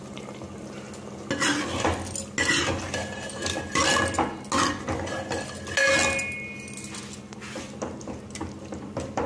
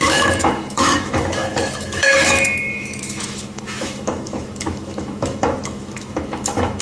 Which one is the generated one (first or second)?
second